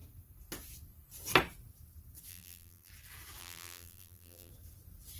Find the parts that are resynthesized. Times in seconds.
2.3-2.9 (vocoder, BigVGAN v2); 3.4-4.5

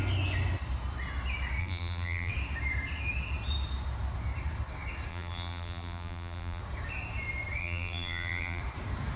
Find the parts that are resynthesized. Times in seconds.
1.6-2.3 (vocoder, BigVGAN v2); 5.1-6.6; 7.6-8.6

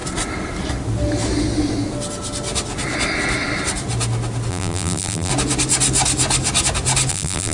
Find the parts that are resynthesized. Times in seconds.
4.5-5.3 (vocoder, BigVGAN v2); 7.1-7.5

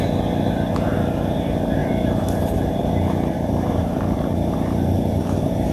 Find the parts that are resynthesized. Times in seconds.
1.8-5.2 (vocoder, BigVGAN v2)

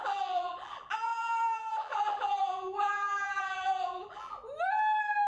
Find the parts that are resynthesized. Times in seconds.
0.0-4.4 (vocoder, BigVGAN v2)